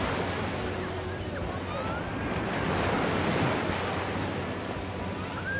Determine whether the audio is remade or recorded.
recorded